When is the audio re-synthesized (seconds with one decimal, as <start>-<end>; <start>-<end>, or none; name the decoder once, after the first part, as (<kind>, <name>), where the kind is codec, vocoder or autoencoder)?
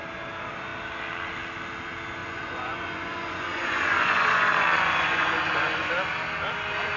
2.2-5.9 (vocoder, Vocos)